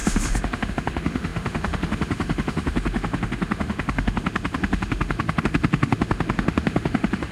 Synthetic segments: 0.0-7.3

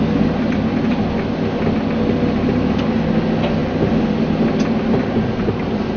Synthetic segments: none

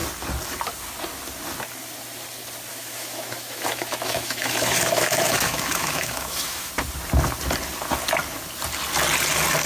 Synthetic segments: 2.7-6.7

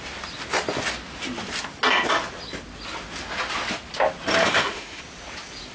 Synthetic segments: 4.4-5.0

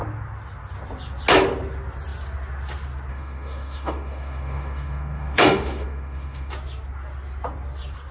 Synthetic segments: 3.1-6.5

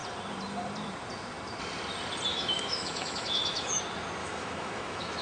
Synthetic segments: 2.3-3.8; 4.2-5.2

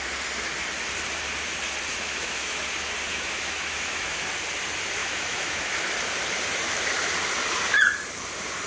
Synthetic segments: 1.9-2.6; 3.1-4.2; 5.0-5.7

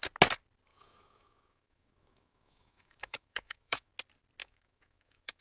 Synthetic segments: 0.7-3.9; 4.4-5.4